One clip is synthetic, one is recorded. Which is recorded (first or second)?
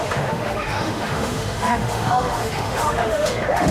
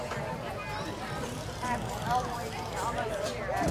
second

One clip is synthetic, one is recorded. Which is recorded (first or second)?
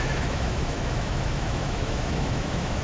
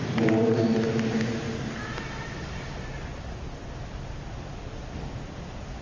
second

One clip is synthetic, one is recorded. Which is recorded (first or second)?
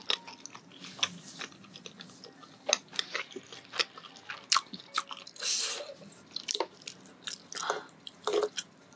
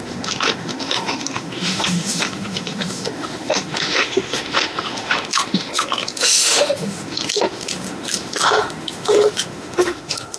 first